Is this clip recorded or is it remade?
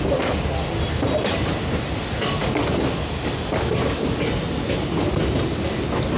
recorded